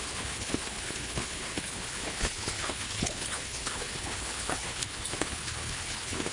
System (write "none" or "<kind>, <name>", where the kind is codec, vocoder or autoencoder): codec, HILCodec